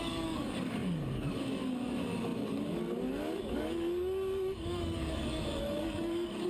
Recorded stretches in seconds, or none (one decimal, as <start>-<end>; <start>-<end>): none